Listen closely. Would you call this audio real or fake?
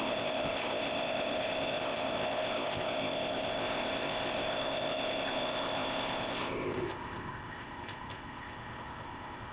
fake